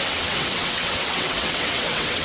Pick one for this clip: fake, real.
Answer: fake